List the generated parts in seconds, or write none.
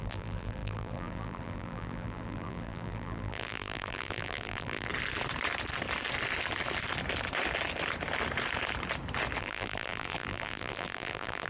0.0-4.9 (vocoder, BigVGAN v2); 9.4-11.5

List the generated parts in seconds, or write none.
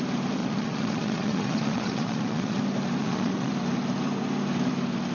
0.4-2.6 (vocoder, Vocos); 3.0-3.5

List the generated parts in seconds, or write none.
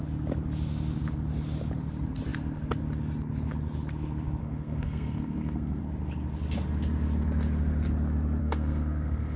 4.4-5.8 (codec, SNAC); 8.4-9.4